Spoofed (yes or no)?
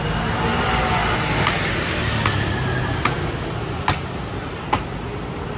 no